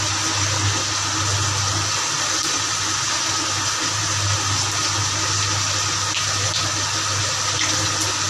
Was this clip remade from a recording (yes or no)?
no